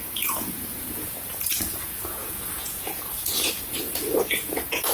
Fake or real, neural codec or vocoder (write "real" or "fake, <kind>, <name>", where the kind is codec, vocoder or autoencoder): fake, vocoder, Vocos